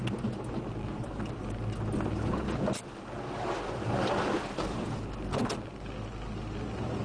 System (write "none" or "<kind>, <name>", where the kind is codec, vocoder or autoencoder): none